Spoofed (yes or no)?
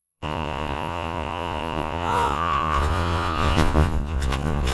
yes